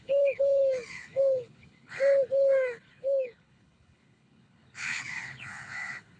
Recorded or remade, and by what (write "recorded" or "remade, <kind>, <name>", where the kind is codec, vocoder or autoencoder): remade, codec, HILCodec